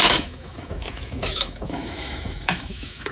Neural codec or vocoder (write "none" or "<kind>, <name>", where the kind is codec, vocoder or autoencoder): autoencoder, DAC-VAE